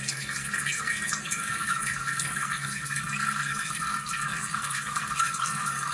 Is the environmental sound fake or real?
fake